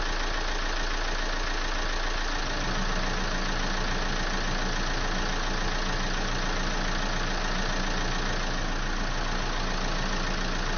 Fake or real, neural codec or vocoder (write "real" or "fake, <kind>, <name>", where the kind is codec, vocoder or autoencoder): real